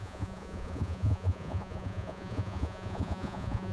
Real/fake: fake